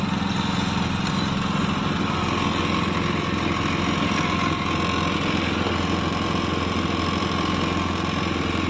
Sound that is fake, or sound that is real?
real